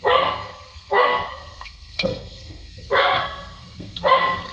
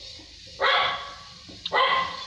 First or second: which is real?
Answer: second